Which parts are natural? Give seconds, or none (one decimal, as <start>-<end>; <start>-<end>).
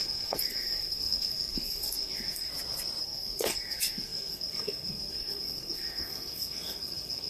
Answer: 2.5-3.0